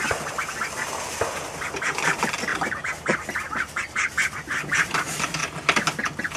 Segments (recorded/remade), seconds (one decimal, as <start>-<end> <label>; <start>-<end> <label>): 0.0-2.5 recorded; 2.5-5.0 remade; 5.0-6.4 recorded